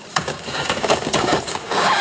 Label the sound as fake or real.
fake